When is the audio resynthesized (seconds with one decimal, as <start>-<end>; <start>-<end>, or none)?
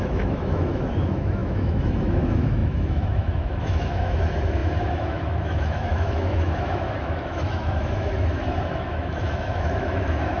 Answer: 0.0-10.4